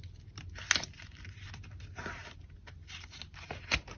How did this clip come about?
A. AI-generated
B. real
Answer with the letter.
B